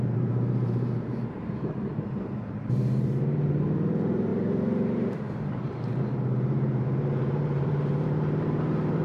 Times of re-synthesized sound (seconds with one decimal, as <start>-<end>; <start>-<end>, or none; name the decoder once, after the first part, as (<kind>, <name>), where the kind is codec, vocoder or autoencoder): 0.0-9.0 (vocoder, BigVGAN v2)